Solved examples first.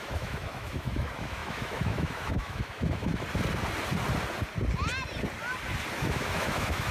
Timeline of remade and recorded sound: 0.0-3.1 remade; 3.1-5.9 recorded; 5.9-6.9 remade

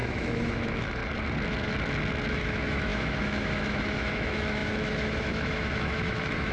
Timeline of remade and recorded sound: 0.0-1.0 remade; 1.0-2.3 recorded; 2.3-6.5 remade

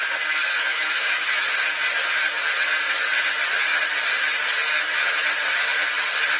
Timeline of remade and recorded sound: 0.0-0.4 recorded; 0.4-1.5 remade; 1.5-6.4 recorded

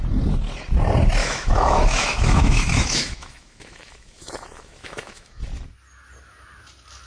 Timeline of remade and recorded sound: 0.0-1.2 recorded; 1.2-5.4 remade; 5.4-7.1 recorded